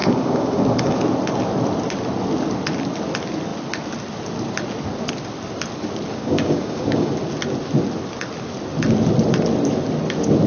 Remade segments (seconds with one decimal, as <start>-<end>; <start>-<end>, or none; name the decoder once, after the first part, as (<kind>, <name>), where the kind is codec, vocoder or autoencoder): 0.0-1.0 (codec, DAC); 6.1-7.1